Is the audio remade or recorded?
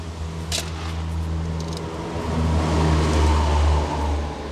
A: recorded